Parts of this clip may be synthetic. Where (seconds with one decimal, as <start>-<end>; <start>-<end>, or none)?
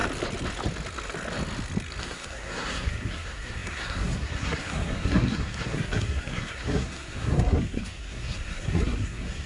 2.0-9.5